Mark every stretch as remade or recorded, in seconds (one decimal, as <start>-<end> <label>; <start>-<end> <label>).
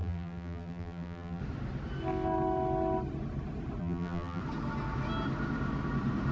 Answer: 0.0-1.4 remade; 1.4-3.8 recorded; 3.8-4.4 remade; 4.4-6.3 recorded